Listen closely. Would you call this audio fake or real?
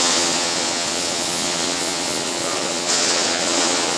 fake